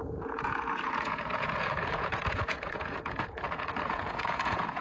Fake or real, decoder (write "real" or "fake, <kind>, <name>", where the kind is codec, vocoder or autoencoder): fake, vocoder, Vocos